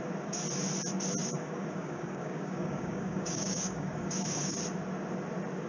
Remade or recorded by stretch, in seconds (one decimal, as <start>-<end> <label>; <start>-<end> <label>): 0.0-1.2 recorded; 1.2-4.6 remade; 4.6-5.7 recorded